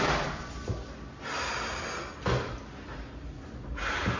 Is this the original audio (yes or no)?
yes